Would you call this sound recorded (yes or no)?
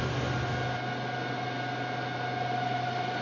yes